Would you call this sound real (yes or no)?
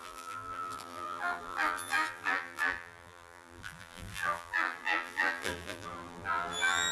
no